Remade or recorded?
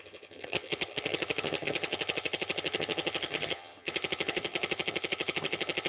remade